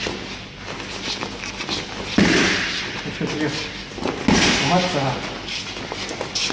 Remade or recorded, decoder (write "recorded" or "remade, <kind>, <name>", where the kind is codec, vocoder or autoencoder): recorded